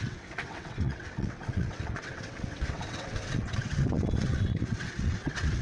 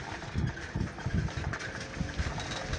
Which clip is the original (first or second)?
second